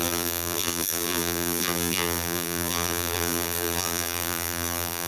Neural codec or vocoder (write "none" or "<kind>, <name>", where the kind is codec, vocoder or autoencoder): vocoder, BigVGAN v2